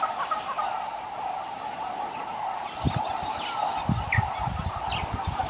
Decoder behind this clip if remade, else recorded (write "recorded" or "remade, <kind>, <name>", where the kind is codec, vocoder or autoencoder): recorded